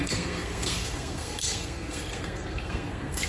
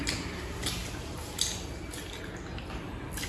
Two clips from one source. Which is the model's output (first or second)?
first